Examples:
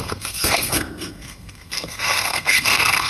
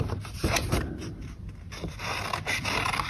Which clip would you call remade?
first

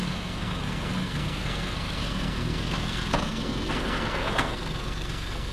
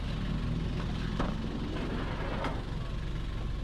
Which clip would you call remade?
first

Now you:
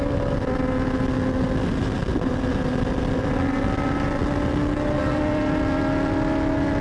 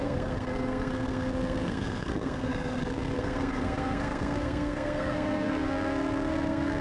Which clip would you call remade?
second